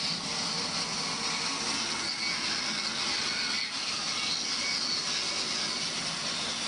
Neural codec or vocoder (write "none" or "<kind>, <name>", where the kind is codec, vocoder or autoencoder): none